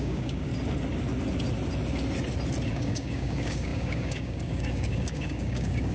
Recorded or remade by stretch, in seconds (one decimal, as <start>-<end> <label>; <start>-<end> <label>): 0.0-0.5 remade; 0.5-2.7 recorded; 2.7-5.9 remade

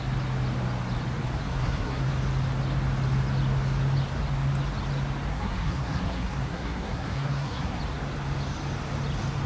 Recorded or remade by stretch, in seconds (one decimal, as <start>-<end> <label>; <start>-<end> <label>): 0.0-1.5 recorded; 1.5-2.1 remade; 2.1-5.3 recorded; 5.3-7.8 remade; 7.8-9.5 recorded

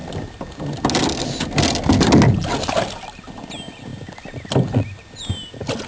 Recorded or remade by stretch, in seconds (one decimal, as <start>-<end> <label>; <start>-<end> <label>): 0.0-5.9 recorded

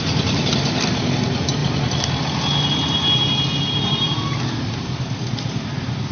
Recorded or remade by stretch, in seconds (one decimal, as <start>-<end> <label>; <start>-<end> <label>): 0.0-6.1 recorded

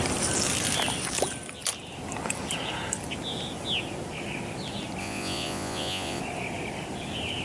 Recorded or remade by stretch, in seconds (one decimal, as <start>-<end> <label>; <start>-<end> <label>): 0.0-5.0 recorded; 5.0-6.2 remade; 6.2-7.4 recorded

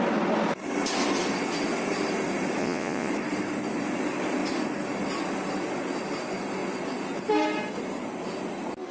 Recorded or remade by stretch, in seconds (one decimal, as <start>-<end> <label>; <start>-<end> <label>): 0.0-2.6 recorded; 2.6-3.1 remade; 3.1-8.9 recorded

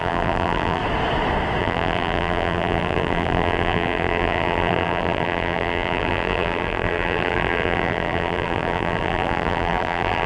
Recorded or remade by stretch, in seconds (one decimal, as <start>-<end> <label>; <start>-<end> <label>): 0.0-0.8 remade; 0.8-1.6 recorded; 1.6-10.3 remade